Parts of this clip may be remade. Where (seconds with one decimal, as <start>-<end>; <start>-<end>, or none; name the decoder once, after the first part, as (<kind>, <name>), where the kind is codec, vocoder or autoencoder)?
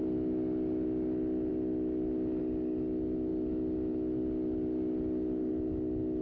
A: none